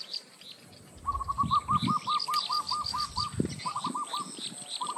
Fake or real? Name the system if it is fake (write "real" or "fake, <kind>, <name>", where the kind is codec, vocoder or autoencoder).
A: real